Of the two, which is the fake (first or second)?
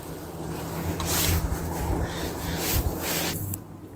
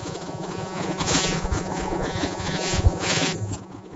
second